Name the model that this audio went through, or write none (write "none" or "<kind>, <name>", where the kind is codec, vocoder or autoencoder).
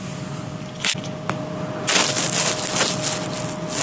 none